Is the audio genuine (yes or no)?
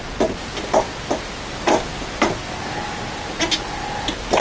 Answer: yes